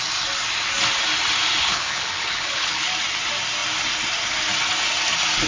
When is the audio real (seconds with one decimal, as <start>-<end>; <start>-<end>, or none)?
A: 0.0-1.6; 2.9-5.5